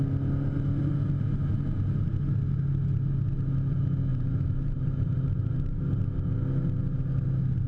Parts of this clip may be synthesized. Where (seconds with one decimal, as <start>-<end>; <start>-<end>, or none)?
4.1-5.8